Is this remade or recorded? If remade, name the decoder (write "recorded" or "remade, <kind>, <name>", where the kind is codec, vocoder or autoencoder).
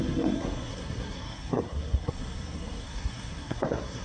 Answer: remade, codec, SNAC